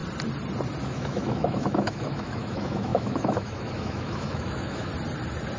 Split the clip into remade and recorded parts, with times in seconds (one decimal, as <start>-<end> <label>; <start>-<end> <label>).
0.0-0.8 recorded; 0.8-4.9 remade; 4.9-5.6 recorded